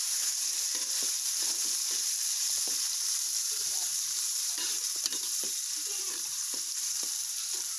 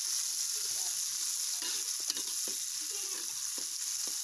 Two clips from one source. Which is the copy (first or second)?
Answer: first